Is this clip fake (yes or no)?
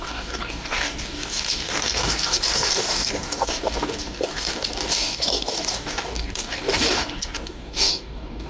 yes